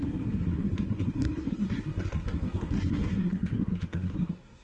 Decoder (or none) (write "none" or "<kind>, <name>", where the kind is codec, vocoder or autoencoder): codec, SNAC